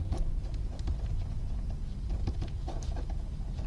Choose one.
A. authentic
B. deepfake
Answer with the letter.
A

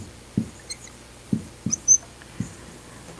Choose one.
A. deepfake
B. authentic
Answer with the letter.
A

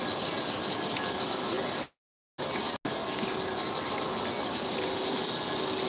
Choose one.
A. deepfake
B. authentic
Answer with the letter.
B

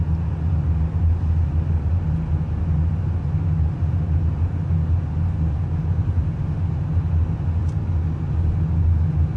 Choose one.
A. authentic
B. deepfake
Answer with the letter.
A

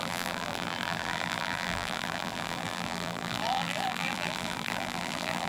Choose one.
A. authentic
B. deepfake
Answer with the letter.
B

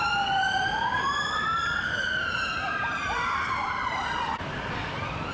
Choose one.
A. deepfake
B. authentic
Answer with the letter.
A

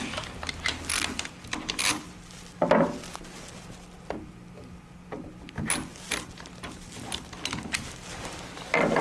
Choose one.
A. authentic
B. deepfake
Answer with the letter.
A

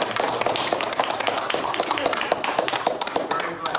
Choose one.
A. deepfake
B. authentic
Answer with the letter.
A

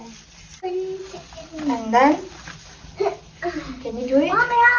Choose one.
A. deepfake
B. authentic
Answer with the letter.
B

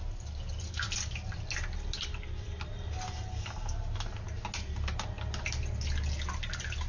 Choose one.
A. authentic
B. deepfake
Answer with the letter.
A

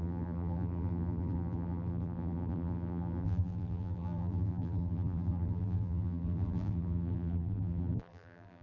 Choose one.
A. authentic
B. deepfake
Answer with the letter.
B